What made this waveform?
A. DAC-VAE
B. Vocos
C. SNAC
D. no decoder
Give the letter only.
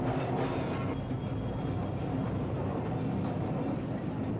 D